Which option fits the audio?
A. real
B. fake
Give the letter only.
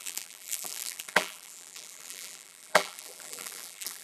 B